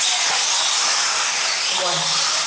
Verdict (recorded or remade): recorded